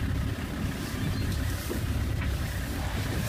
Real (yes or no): no